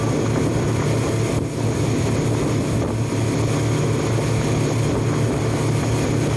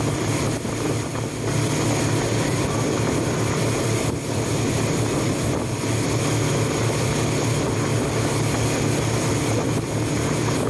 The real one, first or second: first